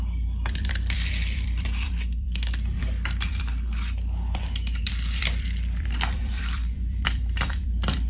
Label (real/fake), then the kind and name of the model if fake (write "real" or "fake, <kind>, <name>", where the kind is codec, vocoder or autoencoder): fake, vocoder, BigVGAN v2